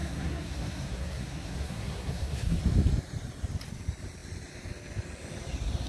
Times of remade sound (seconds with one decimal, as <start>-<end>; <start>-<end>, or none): 0.0-2.6